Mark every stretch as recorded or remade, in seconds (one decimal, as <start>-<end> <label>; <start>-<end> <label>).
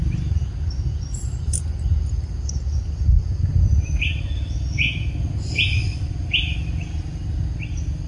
0.0-8.1 recorded